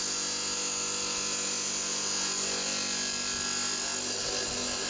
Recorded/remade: recorded